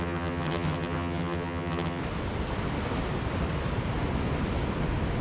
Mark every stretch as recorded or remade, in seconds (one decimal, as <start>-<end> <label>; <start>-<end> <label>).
0.0-2.0 remade; 2.0-5.2 recorded